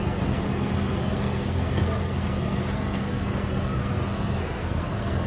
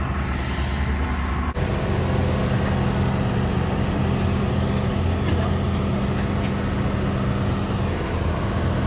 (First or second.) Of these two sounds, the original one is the second